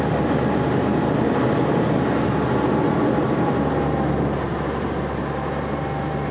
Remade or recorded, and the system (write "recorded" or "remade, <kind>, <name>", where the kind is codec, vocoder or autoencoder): recorded